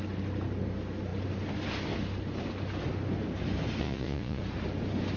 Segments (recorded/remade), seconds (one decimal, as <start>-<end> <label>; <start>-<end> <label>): 0.0-3.8 recorded; 3.8-4.4 remade; 4.4-5.2 recorded